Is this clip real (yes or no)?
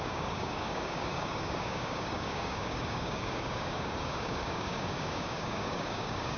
no